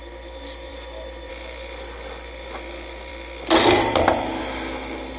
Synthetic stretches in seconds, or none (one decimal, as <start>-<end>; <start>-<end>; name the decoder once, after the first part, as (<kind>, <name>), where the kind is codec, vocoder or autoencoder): 0.0-0.7 (vocoder, BigVGAN v2); 1.3-3.1; 4.4-5.2